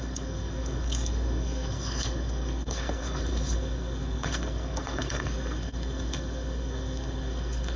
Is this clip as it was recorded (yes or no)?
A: no